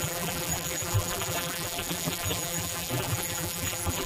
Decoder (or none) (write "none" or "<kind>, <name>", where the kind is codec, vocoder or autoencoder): vocoder, BigVGAN v2